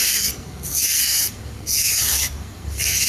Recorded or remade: remade